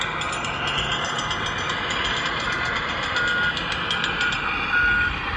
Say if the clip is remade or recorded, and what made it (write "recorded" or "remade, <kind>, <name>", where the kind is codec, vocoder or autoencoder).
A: recorded